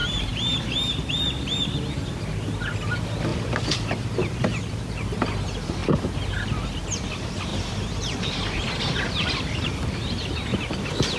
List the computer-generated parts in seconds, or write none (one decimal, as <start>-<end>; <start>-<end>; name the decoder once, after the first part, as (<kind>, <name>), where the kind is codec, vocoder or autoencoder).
0.0-0.6 (vocoder, BigVGAN v2); 3.3-4.7; 7.5-8.6